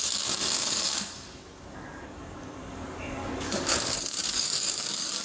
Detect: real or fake fake